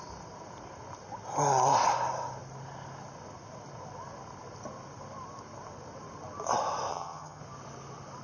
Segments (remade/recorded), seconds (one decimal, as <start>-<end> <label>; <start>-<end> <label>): 0.0-6.9 recorded; 6.9-7.4 remade; 7.4-8.2 recorded